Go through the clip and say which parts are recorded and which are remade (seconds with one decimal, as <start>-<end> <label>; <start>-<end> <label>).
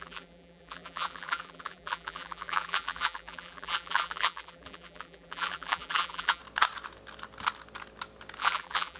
0.0-6.4 remade; 6.4-8.4 recorded; 8.4-9.0 remade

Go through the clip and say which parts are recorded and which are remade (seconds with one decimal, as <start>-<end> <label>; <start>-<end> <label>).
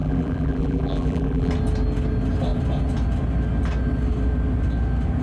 0.0-1.5 remade; 1.5-5.2 recorded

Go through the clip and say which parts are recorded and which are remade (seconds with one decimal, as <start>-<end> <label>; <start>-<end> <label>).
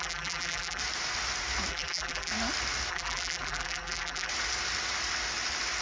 0.0-0.8 remade; 0.8-1.7 recorded; 1.7-2.3 remade; 2.3-2.9 recorded; 2.9-4.3 remade; 4.3-5.8 recorded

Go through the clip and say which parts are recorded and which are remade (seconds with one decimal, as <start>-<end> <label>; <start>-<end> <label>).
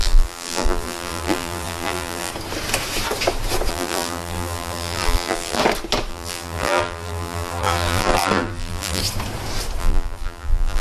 0.0-2.3 remade; 2.3-3.7 recorded; 3.7-5.6 remade; 5.6-6.1 recorded; 6.1-9.0 remade; 9.0-9.8 recorded; 9.8-10.8 remade